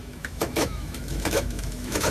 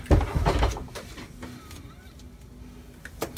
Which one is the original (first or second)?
second